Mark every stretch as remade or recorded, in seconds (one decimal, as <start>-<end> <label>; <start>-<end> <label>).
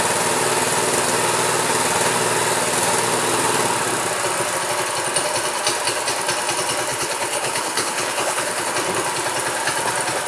0.0-6.9 recorded; 6.9-8.7 remade; 8.7-10.3 recorded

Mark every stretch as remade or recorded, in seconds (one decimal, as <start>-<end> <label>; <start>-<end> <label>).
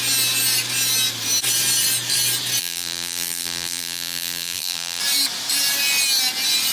0.0-2.6 recorded; 2.6-5.0 remade; 5.0-6.7 recorded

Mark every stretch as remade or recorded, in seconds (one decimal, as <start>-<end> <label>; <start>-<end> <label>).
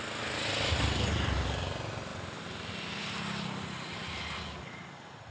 0.0-5.3 recorded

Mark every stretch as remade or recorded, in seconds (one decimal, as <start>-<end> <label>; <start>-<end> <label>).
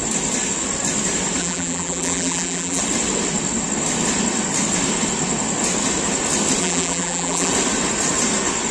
0.0-1.4 recorded; 1.4-2.8 remade; 2.8-6.6 recorded; 6.6-7.5 remade; 7.5-8.7 recorded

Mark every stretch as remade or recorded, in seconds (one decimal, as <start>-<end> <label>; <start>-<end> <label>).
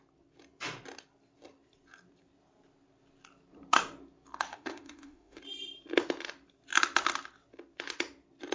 0.0-4.5 recorded; 4.5-5.4 remade; 5.4-8.5 recorded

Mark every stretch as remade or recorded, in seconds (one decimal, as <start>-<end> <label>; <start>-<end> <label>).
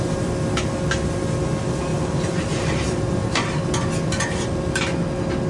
0.0-1.9 recorded; 1.9-3.6 remade; 3.6-5.5 recorded